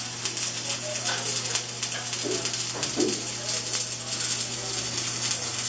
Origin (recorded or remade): recorded